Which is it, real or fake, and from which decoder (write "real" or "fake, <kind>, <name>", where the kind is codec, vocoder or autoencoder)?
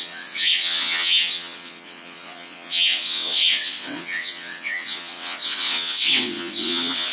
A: fake, vocoder, WaveNeXt